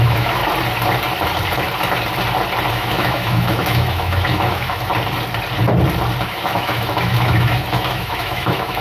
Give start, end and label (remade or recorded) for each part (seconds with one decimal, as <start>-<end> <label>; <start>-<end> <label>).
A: 0.0-0.4 remade; 0.4-2.7 recorded; 2.7-4.9 remade; 4.9-6.2 recorded; 6.2-8.8 remade